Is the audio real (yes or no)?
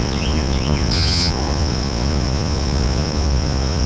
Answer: no